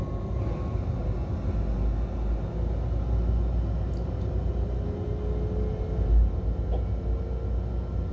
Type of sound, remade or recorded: recorded